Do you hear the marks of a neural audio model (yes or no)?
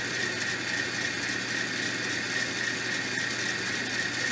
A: no